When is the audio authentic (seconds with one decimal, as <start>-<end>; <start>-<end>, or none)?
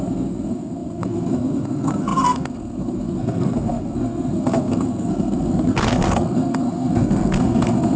none